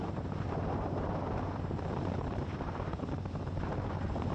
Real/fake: fake